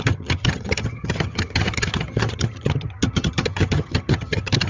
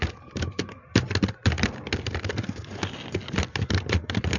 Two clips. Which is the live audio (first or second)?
second